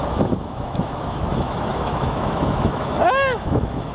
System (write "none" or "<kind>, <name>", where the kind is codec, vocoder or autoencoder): autoencoder, DAC-VAE